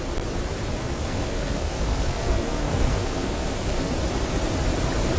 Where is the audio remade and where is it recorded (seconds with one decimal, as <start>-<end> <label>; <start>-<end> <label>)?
0.0-0.8 recorded; 0.8-3.9 remade; 3.9-5.2 recorded